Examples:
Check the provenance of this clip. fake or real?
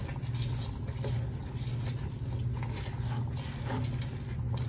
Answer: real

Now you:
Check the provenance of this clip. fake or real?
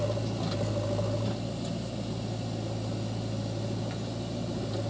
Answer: real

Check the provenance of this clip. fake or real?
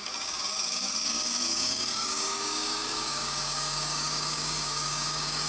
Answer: fake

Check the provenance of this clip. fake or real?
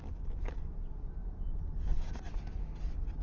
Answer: real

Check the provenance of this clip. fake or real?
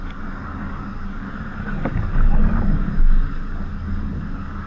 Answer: fake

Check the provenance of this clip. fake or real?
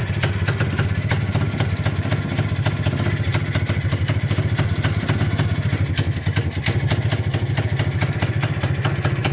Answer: real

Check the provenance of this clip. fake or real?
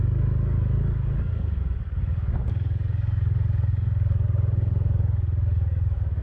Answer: fake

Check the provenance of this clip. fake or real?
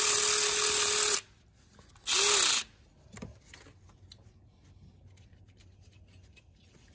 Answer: real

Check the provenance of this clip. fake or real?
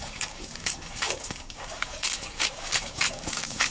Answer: fake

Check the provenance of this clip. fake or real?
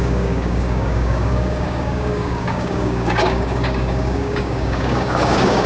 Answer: fake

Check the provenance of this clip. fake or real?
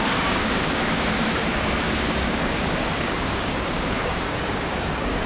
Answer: fake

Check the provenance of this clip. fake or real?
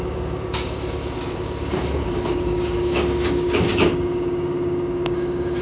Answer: fake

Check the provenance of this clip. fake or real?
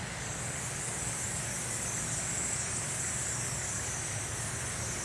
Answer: fake